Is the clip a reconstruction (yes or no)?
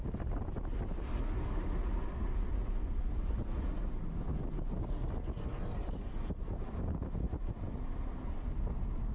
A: no